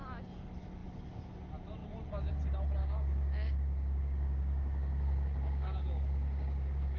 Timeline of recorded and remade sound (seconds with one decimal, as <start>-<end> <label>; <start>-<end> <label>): 0.0-2.8 recorded; 2.8-7.0 remade

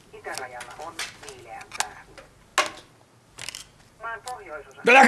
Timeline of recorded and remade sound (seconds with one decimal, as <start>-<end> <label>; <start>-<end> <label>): 0.0-5.1 recorded

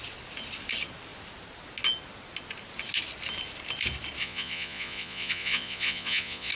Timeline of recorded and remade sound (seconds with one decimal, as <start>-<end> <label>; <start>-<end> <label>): 0.0-4.2 recorded; 4.2-6.5 remade